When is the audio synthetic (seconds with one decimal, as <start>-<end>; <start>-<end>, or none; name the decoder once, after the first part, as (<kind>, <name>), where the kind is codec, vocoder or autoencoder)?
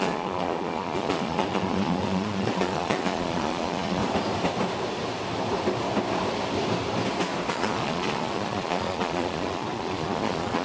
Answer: 0.0-4.0 (vocoder, Vocos); 7.5-10.6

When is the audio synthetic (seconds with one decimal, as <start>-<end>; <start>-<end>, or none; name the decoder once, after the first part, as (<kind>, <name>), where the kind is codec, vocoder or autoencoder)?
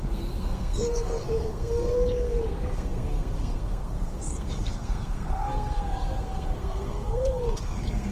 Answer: 0.0-8.1 (codec, SNAC)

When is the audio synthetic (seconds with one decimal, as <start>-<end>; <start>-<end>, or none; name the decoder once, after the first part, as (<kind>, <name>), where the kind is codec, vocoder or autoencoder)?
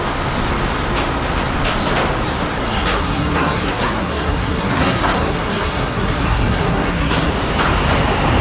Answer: 2.6-7.3 (codec, SNAC)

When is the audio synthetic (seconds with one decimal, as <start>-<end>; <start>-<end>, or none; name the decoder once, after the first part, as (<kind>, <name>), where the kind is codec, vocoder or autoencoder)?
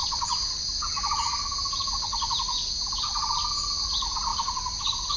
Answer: 0.0-0.7 (vocoder, BigVGAN v2); 4.3-5.2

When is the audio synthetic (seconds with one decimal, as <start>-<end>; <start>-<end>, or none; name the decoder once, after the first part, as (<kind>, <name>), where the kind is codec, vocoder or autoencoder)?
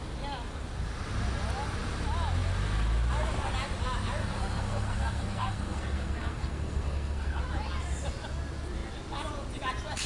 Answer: 4.2-7.4 (codec, SNAC)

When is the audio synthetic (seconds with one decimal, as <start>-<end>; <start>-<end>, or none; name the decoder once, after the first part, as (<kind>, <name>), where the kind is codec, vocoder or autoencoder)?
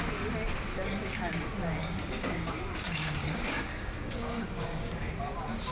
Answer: 1.8-2.6 (codec, DAC); 3.2-5.1